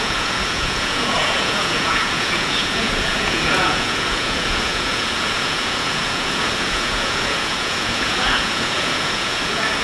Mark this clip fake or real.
fake